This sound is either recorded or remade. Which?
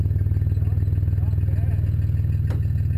recorded